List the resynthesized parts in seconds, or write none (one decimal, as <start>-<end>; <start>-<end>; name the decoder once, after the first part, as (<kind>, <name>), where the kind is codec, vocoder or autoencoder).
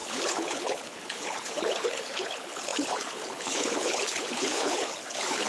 0.0-5.5 (codec, HILCodec)